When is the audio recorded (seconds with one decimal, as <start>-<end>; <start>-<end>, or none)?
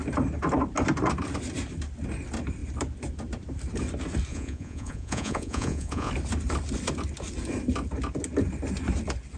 0.0-4.3; 6.1-9.4